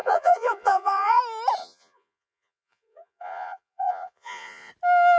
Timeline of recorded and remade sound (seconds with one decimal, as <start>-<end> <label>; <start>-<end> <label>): 0.0-1.2 remade; 1.2-1.6 recorded; 1.6-4.7 remade; 4.7-5.2 recorded

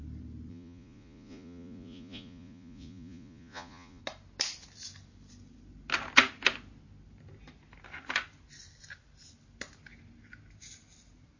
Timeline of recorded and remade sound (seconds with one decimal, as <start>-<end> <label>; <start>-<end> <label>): 0.0-0.5 recorded; 0.5-4.0 remade; 4.0-11.4 recorded

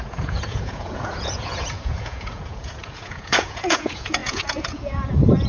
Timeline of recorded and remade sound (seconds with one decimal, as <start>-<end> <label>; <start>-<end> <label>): 0.0-5.5 remade

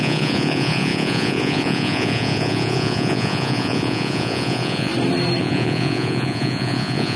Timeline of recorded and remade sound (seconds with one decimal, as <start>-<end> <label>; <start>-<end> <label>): 0.0-4.9 remade; 4.9-5.4 recorded; 5.4-7.2 remade

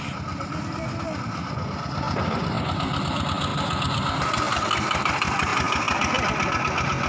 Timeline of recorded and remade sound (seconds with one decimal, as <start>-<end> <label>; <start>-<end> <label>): 0.0-7.1 recorded

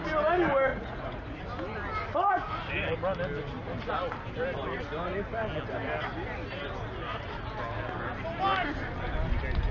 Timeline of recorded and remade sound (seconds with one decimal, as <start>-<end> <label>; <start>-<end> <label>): 0.0-0.7 recorded; 0.7-1.4 remade; 1.4-9.7 recorded